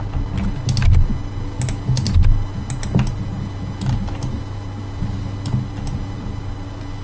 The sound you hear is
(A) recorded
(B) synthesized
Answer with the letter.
A